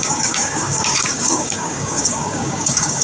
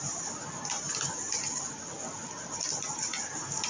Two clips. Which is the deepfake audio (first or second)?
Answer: first